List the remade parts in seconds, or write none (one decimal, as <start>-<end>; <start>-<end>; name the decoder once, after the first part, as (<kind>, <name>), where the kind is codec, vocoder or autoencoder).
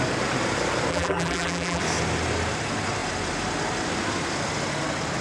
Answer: 0.9-1.8 (vocoder, BigVGAN v2)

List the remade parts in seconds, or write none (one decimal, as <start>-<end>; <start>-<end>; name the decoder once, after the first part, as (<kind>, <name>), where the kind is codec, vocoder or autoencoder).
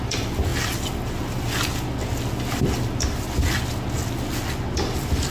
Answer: none